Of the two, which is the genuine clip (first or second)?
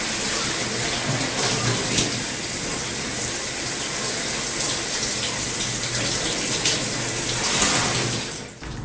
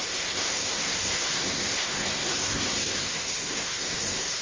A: first